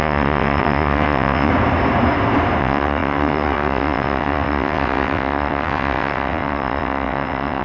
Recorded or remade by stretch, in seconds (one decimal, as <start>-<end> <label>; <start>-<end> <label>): 0.0-1.5 remade; 1.5-2.6 recorded; 2.6-7.6 remade